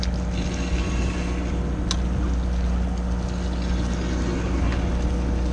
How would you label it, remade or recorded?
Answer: recorded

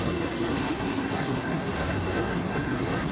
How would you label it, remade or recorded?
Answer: remade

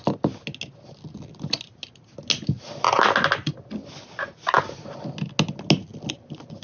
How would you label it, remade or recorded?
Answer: recorded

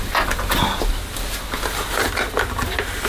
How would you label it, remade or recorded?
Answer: recorded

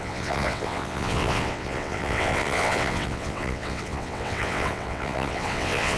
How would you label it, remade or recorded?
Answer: remade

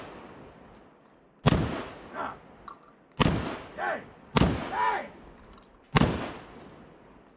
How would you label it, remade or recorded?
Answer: recorded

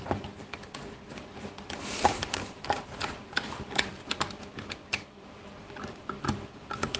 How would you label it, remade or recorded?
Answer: remade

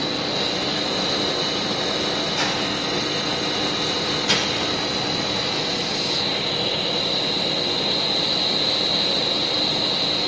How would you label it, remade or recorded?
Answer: recorded